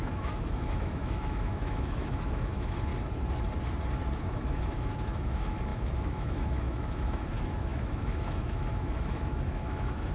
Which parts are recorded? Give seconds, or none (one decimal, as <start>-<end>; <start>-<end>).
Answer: 2.9-4.2